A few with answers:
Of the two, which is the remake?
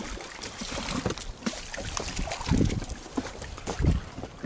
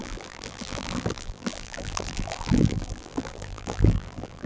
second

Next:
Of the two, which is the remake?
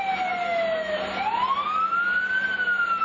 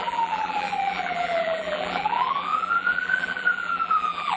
second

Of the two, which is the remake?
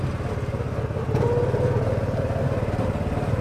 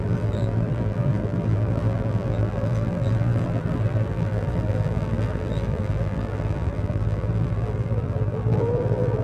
second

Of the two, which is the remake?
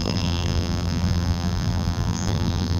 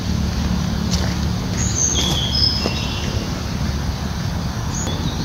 first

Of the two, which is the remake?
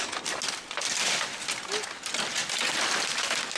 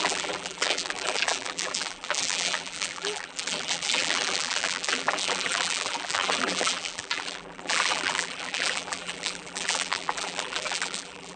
second